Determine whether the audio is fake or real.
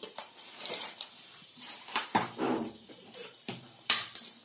fake